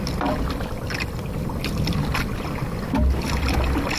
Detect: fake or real real